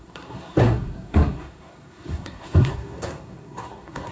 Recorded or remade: remade